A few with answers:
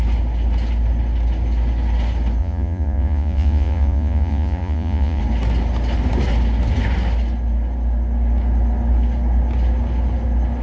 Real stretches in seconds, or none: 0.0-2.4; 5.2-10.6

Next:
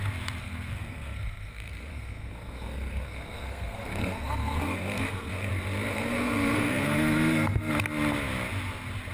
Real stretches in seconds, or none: 0.0-0.4; 5.5-5.9; 7.7-9.1

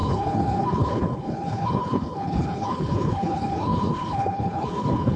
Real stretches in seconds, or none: none

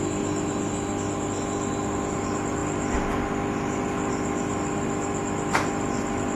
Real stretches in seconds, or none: 0.0-6.3